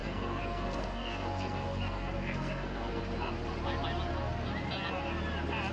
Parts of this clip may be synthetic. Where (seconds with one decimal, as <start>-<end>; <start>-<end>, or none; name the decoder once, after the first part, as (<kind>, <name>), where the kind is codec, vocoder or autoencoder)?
0.0-3.0 (codec, SNAC)